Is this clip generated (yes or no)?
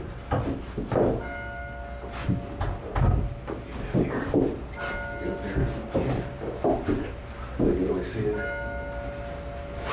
no